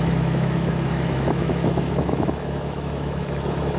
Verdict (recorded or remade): remade